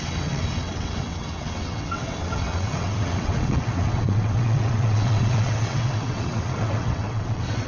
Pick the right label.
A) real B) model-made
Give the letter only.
B